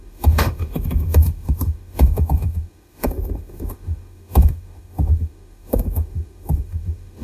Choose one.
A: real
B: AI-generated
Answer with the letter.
B